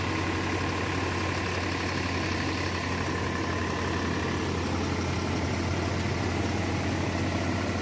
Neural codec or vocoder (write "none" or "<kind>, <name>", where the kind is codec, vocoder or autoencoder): none